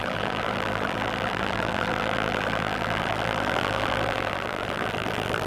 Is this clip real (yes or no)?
no